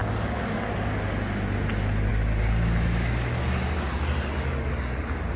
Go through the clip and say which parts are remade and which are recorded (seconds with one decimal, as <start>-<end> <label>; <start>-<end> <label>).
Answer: 0.0-0.6 remade; 0.6-2.1 recorded; 2.1-5.4 remade